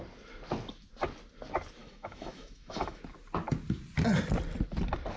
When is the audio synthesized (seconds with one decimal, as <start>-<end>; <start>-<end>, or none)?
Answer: 1.8-3.0